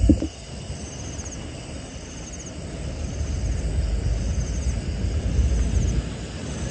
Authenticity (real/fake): real